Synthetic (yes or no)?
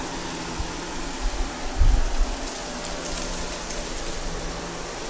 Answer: no